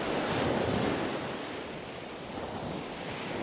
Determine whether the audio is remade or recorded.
recorded